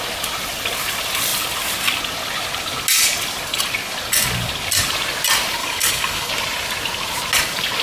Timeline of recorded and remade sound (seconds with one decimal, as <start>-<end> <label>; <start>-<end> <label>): 0.0-5.6 recorded; 5.6-6.3 remade; 6.3-7.8 recorded